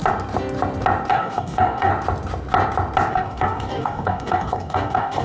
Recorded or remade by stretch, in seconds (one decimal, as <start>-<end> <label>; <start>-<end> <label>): 0.0-1.1 recorded; 1.1-1.9 remade; 1.9-3.1 recorded; 3.1-5.2 remade